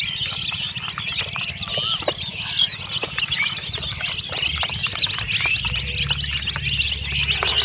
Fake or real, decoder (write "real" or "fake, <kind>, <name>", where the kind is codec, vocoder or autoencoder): real